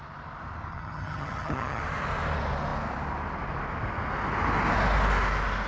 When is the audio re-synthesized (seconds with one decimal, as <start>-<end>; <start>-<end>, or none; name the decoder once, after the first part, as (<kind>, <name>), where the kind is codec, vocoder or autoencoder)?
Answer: 0.7-1.8 (vocoder, HiFi-GAN)